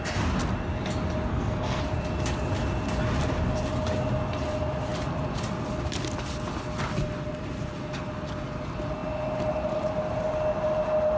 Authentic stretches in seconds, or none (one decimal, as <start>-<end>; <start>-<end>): 0.0-1.3; 1.8-11.2

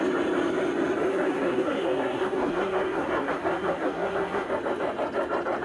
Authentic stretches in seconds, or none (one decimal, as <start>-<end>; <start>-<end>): 0.0-1.1; 4.5-5.6

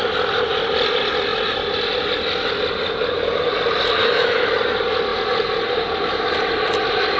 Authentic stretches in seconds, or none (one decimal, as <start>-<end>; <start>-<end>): 0.0-4.0; 4.5-7.2